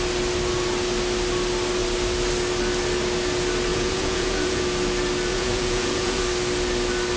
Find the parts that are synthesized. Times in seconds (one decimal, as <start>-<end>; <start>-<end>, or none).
3.7-4.6; 5.3-6.2